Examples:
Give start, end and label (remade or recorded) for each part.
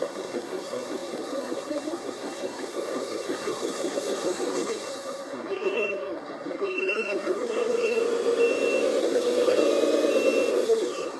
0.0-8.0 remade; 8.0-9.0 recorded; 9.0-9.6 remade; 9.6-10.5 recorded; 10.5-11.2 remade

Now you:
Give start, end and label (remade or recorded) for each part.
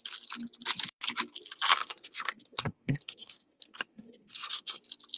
0.0-1.7 recorded; 1.7-4.8 remade; 4.8-5.2 recorded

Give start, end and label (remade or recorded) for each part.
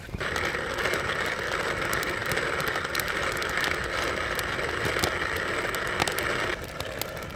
0.0-7.4 recorded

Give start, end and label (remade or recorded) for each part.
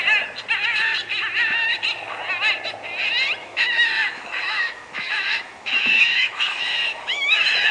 0.0-3.4 recorded; 3.4-7.7 remade